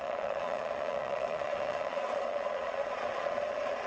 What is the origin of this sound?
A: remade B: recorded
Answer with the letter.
A